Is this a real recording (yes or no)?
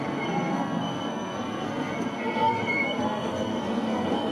no